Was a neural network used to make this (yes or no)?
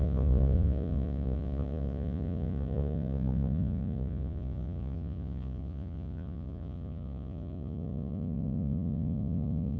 yes